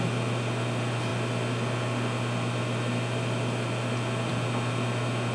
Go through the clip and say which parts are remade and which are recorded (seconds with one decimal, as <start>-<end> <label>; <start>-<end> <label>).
0.0-5.3 recorded